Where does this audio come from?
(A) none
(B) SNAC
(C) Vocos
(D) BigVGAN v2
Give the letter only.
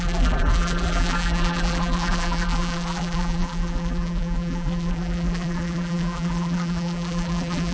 D